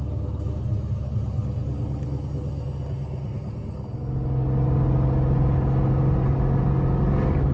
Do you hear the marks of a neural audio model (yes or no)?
no